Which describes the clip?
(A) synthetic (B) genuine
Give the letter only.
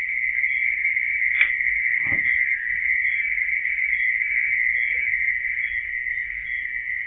A